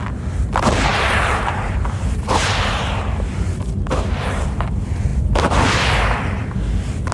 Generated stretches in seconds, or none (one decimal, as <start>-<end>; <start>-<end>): 0.9-4.6